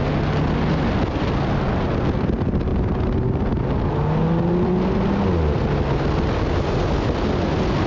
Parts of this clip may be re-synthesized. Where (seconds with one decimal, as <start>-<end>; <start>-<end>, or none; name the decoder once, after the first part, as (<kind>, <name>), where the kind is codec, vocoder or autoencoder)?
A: none